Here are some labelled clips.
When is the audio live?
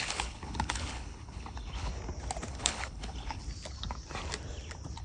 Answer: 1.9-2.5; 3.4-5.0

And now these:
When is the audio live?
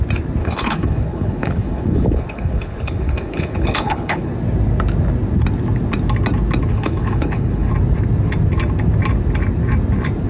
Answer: 0.0-0.4; 4.3-6.7; 7.7-10.3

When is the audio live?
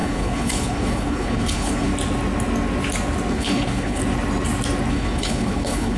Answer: 1.9-3.3; 4.0-4.9